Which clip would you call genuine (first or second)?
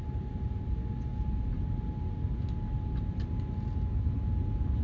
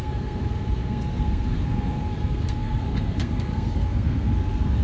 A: first